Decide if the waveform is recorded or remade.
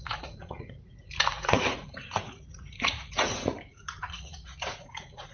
remade